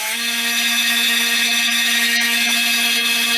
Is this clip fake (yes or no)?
yes